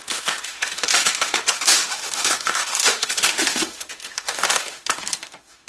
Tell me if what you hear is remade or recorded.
remade